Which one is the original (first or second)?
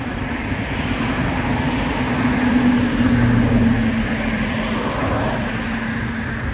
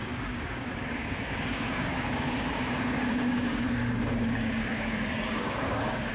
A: first